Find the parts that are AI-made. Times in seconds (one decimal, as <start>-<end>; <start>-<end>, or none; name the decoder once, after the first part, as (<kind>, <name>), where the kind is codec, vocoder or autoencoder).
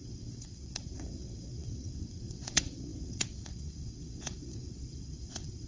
0.0-5.7 (vocoder, WaveNeXt)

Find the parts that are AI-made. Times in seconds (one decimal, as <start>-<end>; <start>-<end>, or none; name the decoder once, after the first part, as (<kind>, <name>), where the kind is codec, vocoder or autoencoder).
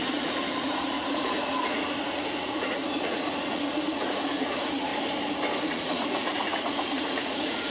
0.0-4.9 (vocoder, Vocos); 5.6-7.7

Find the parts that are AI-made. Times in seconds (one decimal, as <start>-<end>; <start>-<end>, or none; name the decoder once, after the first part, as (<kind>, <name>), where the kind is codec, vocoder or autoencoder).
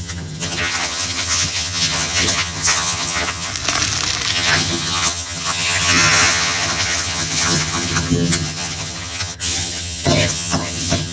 0.0-3.5 (vocoder, HiFi-GAN); 4.3-11.1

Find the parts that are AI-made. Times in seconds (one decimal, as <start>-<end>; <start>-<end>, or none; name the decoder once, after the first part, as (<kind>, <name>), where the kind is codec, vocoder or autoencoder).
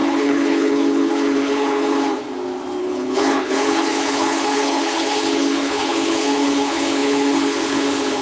0.0-2.2 (codec, HILCodec); 2.8-8.2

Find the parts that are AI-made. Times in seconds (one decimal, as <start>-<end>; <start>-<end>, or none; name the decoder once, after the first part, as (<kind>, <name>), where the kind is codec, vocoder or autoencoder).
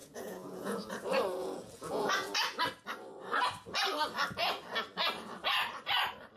0.0-0.9 (vocoder, Vocos); 1.4-2.1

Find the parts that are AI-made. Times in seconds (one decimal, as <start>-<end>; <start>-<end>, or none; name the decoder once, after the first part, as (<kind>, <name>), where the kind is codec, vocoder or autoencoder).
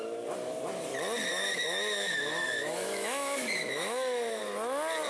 1.3-4.4 (autoencoder, DAC-VAE)